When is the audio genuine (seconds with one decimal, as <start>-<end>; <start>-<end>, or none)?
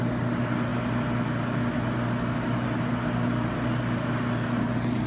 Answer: 0.0-5.1